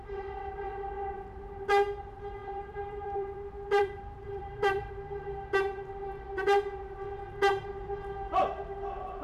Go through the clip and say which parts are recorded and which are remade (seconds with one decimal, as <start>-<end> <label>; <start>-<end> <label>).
0.0-2.4 recorded; 2.4-4.9 remade; 4.9-9.2 recorded